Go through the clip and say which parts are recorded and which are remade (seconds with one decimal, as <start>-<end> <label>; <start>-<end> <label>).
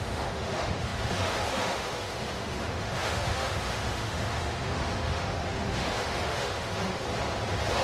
0.0-7.0 remade; 7.0-7.8 recorded